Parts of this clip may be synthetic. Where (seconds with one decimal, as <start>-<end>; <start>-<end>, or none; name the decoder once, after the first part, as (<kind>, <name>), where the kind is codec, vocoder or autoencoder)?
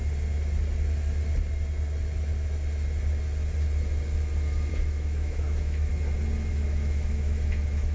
4.7-5.9 (autoencoder, DAC-VAE); 6.5-7.9